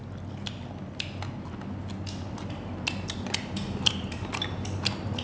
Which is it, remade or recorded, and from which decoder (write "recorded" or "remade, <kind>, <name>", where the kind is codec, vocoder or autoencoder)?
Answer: recorded